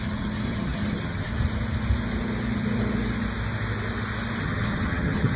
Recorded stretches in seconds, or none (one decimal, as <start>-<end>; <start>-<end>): 1.3-4.4